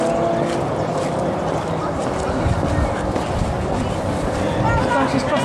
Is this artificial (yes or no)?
no